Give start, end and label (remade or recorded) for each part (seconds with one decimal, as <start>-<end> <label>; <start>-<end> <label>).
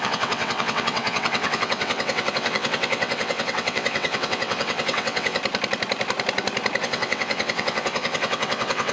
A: 0.0-5.4 remade; 5.4-6.8 recorded; 6.8-8.9 remade